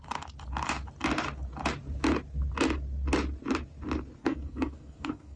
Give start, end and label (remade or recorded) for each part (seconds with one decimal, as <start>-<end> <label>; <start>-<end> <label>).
0.0-4.2 recorded; 4.2-5.4 remade